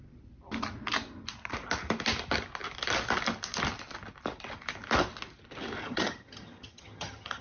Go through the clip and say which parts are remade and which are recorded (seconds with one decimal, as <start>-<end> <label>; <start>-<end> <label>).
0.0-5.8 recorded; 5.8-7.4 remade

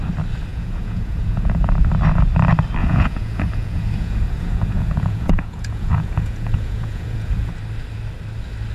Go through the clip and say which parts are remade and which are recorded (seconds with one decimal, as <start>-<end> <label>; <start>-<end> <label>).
0.0-0.5 recorded; 0.5-1.7 remade; 1.7-2.8 recorded; 2.8-7.5 remade; 7.5-8.7 recorded

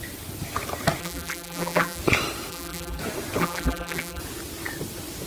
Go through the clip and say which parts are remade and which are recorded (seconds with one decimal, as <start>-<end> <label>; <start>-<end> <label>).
0.0-1.0 recorded; 1.0-2.0 remade; 2.0-2.5 recorded; 2.5-3.0 remade; 3.0-3.4 recorded; 3.4-4.2 remade; 4.2-5.3 recorded